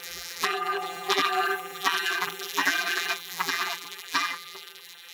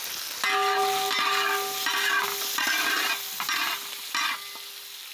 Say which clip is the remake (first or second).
first